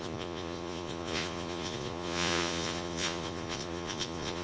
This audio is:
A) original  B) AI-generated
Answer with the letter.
B